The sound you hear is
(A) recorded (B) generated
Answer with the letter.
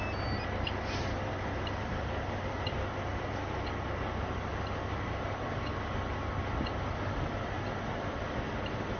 A